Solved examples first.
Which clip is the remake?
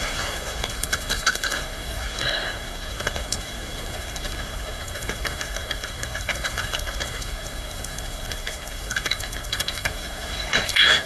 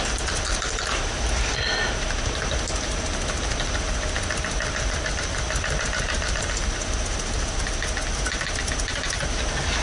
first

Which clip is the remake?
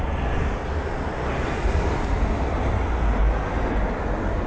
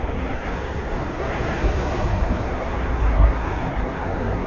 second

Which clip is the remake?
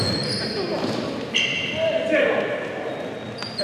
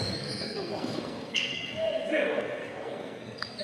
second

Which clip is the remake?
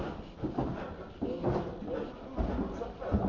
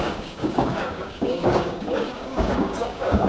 second